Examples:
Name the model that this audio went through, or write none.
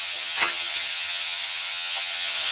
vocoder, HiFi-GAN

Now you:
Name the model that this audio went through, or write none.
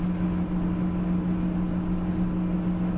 none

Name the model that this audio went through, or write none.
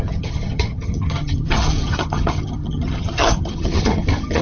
vocoder, HiFi-GAN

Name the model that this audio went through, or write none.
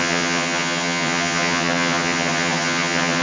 vocoder, HiFi-GAN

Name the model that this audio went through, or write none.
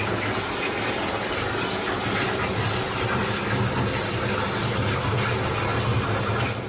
none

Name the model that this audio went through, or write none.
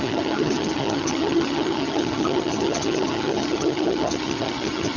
vocoder, HiFi-GAN